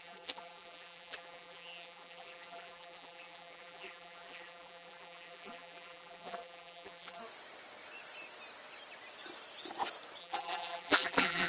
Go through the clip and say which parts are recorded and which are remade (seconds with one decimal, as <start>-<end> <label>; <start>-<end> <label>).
0.0-7.2 remade; 7.2-10.2 recorded; 10.2-11.5 remade